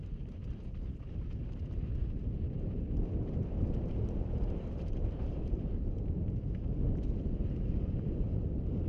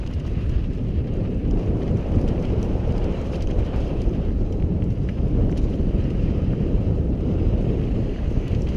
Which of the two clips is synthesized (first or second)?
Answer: second